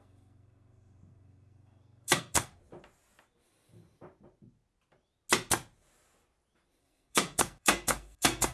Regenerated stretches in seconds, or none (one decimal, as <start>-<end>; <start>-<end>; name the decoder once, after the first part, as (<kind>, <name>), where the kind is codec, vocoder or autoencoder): 0.0-2.6 (codec, SNAC); 6.8-8.5